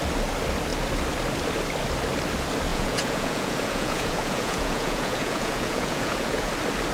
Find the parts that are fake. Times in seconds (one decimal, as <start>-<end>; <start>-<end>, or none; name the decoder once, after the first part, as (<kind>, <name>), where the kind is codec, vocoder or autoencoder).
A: 2.7-6.5 (vocoder, Vocos)